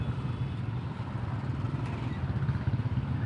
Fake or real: real